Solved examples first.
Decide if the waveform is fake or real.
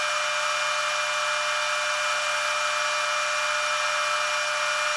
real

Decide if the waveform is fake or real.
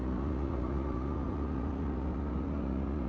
fake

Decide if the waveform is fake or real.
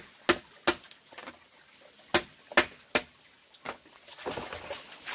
real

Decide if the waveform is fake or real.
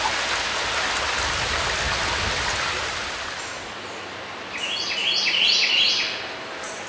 real